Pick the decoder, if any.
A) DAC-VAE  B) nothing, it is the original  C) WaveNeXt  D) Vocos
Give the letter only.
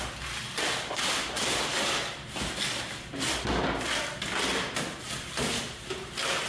B